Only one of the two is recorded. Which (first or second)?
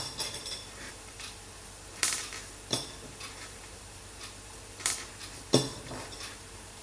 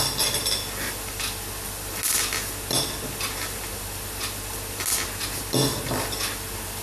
second